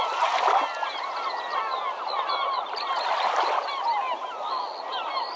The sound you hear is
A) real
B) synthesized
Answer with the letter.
A